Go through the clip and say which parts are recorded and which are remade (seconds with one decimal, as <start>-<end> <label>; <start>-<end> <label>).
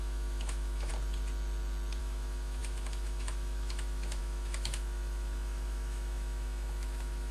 0.0-0.9 remade; 0.9-2.0 recorded; 2.0-7.3 remade